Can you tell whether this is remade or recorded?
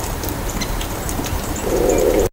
remade